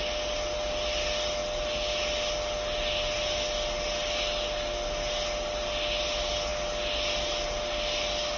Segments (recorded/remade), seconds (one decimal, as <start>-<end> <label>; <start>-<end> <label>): 0.0-8.4 recorded